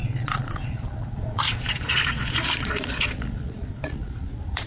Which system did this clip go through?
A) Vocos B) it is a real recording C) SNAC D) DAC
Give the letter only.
A